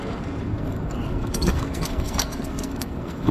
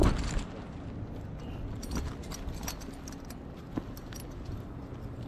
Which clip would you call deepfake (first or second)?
first